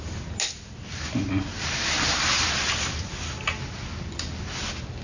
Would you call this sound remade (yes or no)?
no